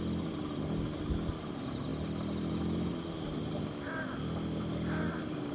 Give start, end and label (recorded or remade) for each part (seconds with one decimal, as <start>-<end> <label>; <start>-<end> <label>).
0.0-5.5 recorded